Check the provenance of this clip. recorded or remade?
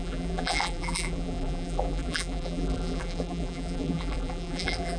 remade